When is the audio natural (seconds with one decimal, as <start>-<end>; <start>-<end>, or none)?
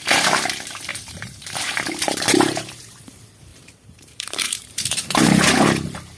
0.0-0.9; 2.8-3.5; 5.5-6.2